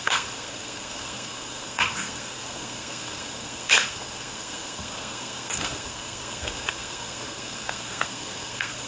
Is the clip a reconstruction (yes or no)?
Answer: yes